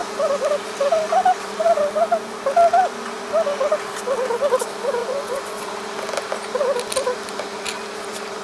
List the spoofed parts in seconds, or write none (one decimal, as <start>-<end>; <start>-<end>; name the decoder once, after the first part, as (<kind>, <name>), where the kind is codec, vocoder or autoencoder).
5.0-5.7 (vocoder, Vocos)